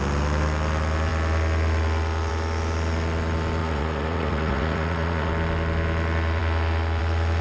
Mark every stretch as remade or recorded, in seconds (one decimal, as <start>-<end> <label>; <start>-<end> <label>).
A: 0.0-3.6 recorded; 3.6-5.3 remade; 5.3-7.4 recorded